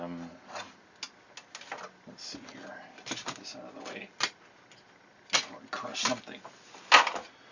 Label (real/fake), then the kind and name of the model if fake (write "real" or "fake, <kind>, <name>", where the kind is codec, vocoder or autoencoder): real